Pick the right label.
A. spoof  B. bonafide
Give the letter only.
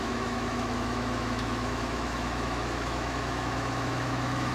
A